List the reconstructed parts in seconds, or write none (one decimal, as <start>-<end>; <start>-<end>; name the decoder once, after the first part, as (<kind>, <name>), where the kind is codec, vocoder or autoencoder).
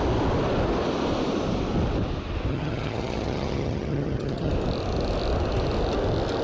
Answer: 2.5-4.5 (vocoder, HiFi-GAN)